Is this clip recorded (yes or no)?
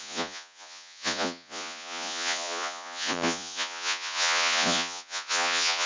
no